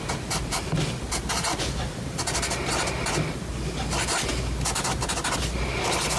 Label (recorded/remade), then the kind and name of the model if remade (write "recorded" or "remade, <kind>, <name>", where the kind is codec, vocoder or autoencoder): recorded